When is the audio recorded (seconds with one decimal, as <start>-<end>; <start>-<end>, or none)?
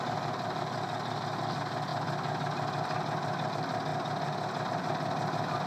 0.0-5.7